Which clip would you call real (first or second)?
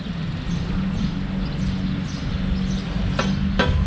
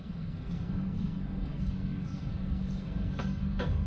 first